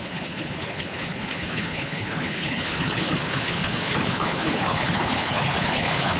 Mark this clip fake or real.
fake